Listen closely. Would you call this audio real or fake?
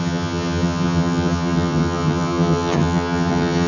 fake